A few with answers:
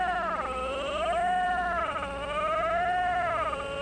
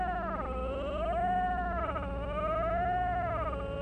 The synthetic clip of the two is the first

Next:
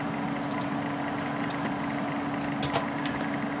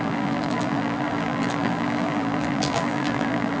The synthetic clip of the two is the second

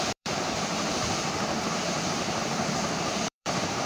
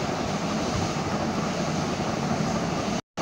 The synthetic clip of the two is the first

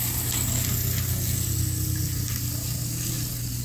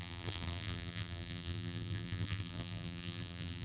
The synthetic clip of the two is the second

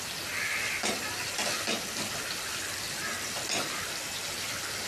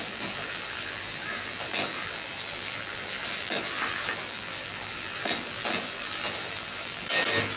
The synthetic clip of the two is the second